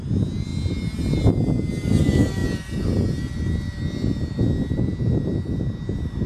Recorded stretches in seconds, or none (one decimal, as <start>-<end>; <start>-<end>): 0.0-6.3